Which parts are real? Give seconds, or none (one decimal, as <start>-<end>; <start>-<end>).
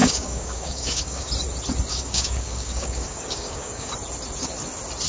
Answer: 1.3-1.9; 3.9-5.1